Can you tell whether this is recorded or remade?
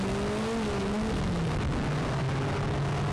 recorded